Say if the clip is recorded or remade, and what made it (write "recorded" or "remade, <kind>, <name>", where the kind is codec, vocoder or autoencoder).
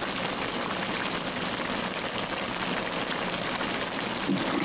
recorded